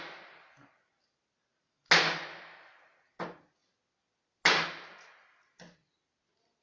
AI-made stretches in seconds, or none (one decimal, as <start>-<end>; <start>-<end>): none